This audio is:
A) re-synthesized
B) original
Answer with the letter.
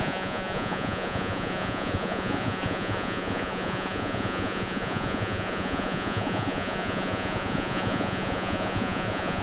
A